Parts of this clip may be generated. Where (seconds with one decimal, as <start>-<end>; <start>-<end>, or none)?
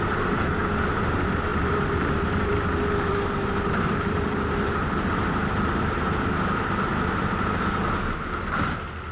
1.5-5.8; 6.9-7.9